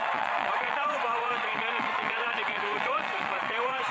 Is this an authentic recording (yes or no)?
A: no